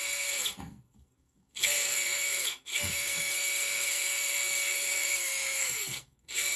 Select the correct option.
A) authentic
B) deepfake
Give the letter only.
B